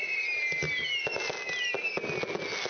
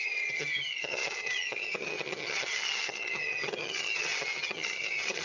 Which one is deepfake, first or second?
second